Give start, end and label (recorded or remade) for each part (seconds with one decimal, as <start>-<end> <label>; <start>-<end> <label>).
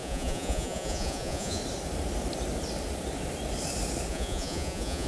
0.0-1.6 remade; 1.6-4.1 recorded; 4.1-5.1 remade